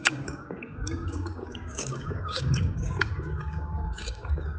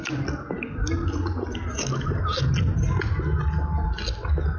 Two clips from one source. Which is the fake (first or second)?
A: first